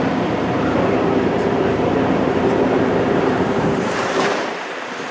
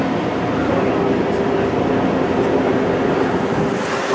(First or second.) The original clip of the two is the second